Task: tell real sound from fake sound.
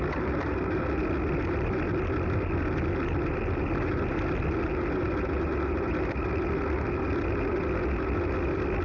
real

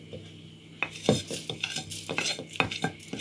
real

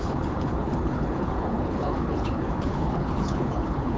fake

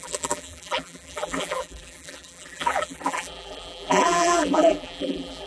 fake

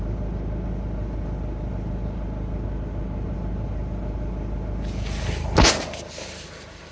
real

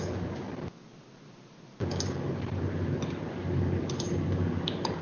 real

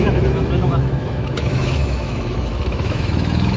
fake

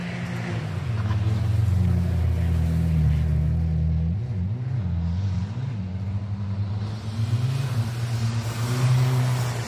real